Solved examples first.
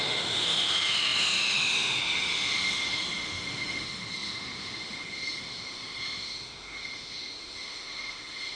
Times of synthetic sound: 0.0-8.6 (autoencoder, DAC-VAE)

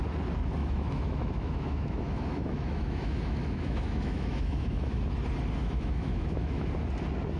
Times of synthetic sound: 0.6-5.0 (autoencoder, DAC-VAE); 5.6-6.7

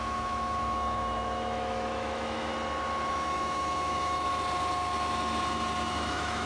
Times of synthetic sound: 0.0-2.5 (autoencoder, DAC-VAE); 3.1-4.3; 5.9-6.5

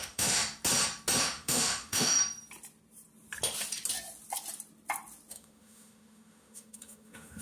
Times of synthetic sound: 0.0-0.4 (autoencoder, DAC-VAE); 1.2-2.2; 5.3-7.4

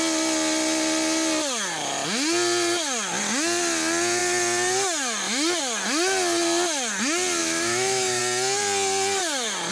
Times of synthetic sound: 7.4-8.2 (autoencoder, DAC-VAE)